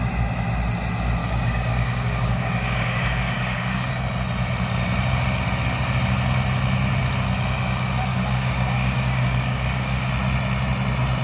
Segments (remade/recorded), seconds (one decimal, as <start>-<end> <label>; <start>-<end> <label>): 0.0-1.2 recorded; 1.2-3.9 remade; 3.9-8.1 recorded; 8.1-10.1 remade; 10.1-11.2 recorded